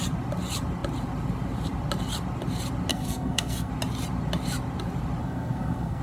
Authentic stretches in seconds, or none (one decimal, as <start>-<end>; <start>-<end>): 0.0-2.9; 3.7-5.2

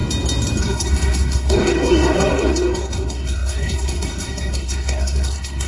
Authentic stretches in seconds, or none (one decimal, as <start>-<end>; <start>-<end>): 0.0-0.6

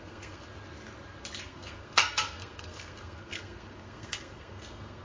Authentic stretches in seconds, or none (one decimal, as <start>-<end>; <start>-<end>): 0.5-1.4

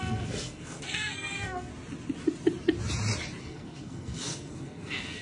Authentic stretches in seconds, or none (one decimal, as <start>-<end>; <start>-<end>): 1.7-3.4

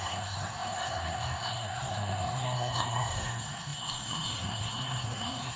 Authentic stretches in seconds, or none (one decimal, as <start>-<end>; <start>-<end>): none

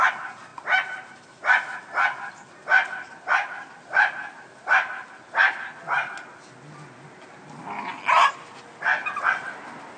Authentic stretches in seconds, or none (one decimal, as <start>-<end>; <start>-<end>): 0.0-10.0

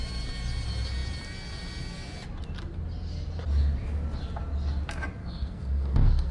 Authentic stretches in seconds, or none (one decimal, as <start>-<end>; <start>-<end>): 0.0-5.2

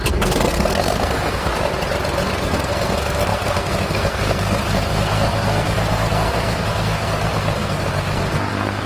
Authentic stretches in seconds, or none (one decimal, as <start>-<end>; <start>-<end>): 1.5-2.3